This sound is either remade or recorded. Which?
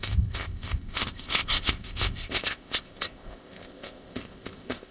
remade